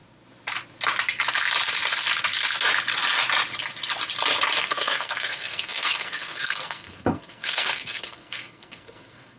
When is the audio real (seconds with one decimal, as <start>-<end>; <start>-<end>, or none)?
0.0-4.6